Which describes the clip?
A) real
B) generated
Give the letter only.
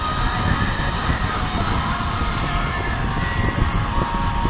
A